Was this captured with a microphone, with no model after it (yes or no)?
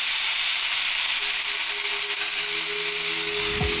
yes